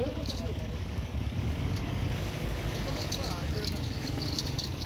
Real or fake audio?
fake